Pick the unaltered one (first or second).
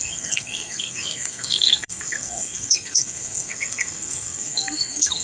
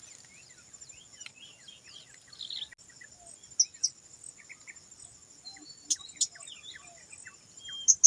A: second